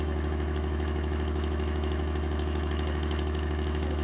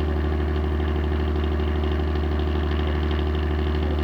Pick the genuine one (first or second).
second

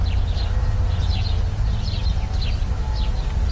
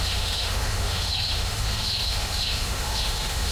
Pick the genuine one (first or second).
first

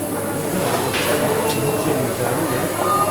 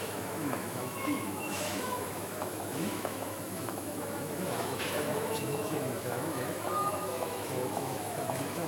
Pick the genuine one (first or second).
first